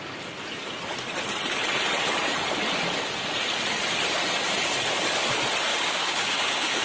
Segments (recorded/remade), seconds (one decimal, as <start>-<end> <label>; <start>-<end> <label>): 0.0-5.7 recorded; 5.7-6.8 remade